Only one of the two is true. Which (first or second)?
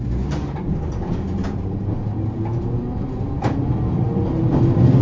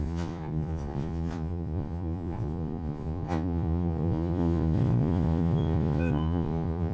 first